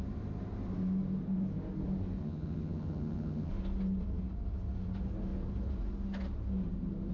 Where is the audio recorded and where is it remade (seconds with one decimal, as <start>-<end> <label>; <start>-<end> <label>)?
0.0-2.2 recorded; 2.2-3.5 remade; 3.5-7.1 recorded